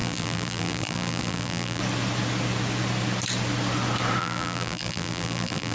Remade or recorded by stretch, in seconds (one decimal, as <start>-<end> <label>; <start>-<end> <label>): 0.0-1.8 remade; 1.8-4.2 recorded; 4.2-5.7 remade